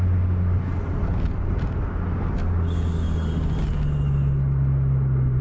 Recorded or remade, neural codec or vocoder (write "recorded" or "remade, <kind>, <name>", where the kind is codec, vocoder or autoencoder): recorded